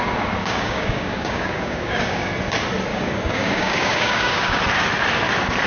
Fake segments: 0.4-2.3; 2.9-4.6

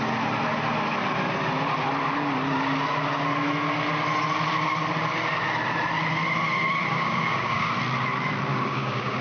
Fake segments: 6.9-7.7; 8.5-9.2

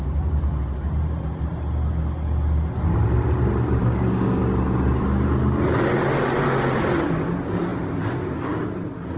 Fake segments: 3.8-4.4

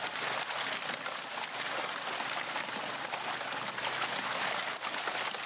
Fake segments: none

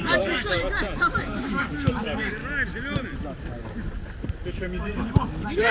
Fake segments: 0.0-0.6; 1.2-2.4; 4.5-5.7

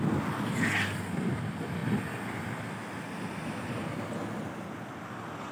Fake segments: none